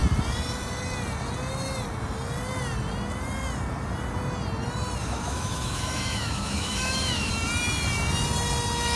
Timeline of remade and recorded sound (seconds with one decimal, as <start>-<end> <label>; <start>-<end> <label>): 0.0-5.0 recorded; 5.0-7.3 remade; 7.3-9.0 recorded